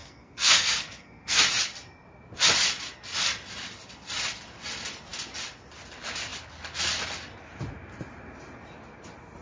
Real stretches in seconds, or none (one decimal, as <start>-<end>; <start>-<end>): 1.4-9.4